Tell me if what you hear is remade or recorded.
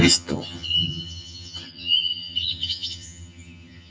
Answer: remade